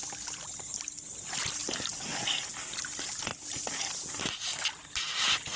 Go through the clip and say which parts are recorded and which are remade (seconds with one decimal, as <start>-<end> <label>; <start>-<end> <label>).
0.0-5.6 recorded